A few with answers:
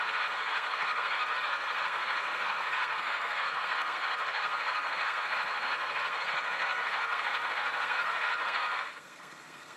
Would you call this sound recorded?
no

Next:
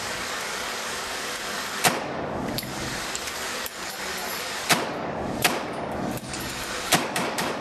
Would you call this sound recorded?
no